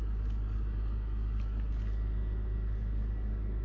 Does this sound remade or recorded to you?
remade